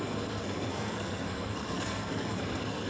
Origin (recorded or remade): remade